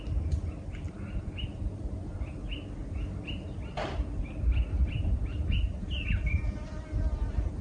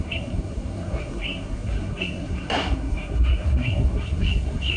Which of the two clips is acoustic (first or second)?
first